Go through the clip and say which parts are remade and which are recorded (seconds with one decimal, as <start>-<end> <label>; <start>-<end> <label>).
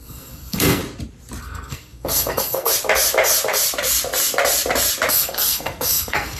0.0-0.8 remade; 0.8-1.4 recorded; 1.4-2.7 remade; 2.7-5.1 recorded; 5.1-6.4 remade